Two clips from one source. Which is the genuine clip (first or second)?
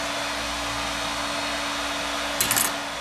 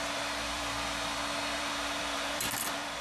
first